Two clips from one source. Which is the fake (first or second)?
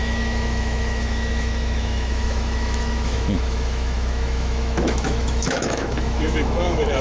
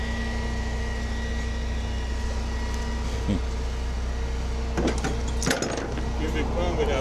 first